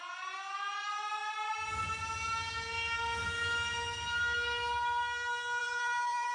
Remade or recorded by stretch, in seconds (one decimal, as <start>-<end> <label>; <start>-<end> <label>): 0.0-1.2 recorded; 1.2-2.0 remade; 2.0-5.6 recorded; 5.6-6.3 remade